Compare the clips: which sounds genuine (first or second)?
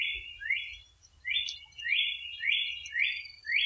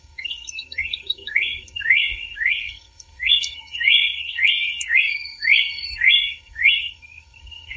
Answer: first